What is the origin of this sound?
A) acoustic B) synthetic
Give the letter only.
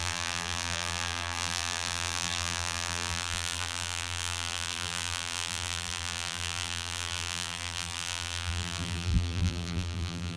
B